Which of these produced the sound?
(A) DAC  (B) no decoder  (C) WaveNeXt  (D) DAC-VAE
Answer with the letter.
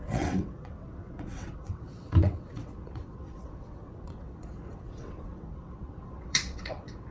C